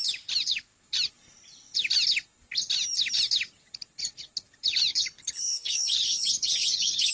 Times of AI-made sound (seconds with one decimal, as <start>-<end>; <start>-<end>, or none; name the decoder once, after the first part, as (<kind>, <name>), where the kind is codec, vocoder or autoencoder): 4.9-7.1 (codec, HILCodec)